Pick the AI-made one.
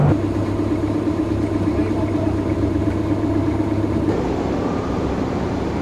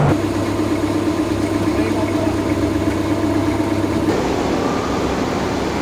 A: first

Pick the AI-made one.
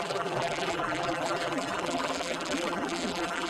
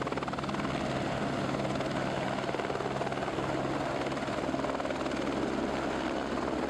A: first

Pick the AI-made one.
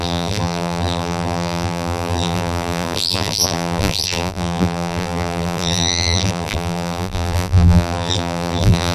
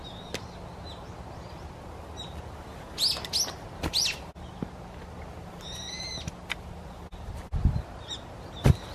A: first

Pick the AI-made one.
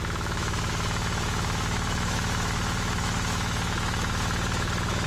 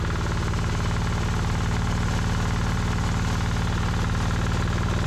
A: first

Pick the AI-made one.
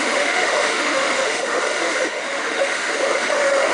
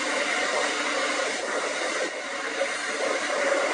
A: first